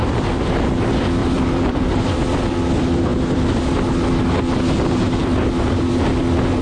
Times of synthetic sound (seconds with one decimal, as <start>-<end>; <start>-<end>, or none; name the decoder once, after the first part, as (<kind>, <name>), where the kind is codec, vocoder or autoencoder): 1.2-1.9 (vocoder, BigVGAN v2)